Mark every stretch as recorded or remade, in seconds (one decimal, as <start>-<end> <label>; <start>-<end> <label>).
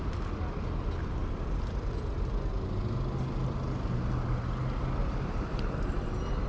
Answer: 0.0-5.0 recorded; 5.0-6.1 remade; 6.1-6.5 recorded